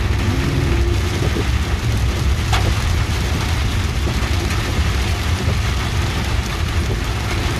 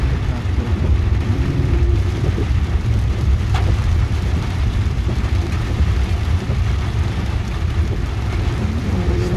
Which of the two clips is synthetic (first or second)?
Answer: second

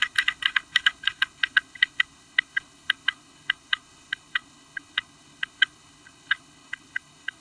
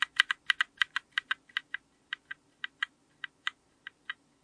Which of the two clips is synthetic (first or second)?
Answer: first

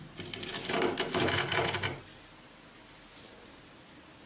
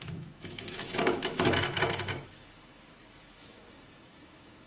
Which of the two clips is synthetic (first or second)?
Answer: second